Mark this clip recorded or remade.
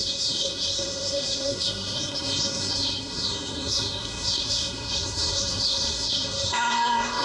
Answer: remade